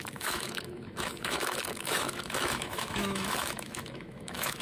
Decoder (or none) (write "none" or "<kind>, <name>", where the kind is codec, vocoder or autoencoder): autoencoder, DAC-VAE